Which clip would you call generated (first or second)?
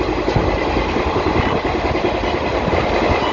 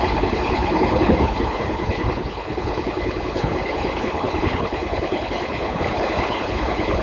second